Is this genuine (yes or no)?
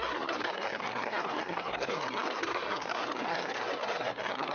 no